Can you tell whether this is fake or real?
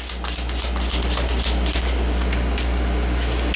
real